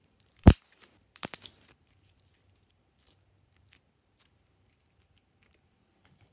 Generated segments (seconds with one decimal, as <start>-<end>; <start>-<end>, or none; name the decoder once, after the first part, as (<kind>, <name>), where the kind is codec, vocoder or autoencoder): 0.0-6.3 (vocoder, BigVGAN v2)